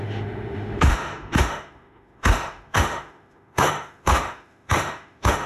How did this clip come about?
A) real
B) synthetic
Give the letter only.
B